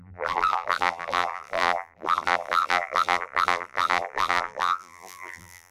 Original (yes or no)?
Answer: no